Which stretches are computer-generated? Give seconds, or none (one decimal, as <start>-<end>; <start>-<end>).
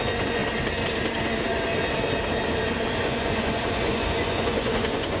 0.0-0.4; 2.9-5.2